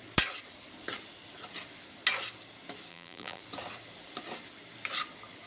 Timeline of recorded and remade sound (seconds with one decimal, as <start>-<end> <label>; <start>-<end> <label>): 0.0-2.9 recorded; 2.9-3.4 remade; 3.4-5.5 recorded